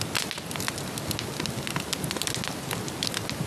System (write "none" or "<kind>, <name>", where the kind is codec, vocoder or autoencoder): none